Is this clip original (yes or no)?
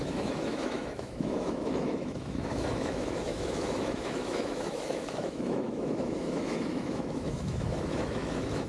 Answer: no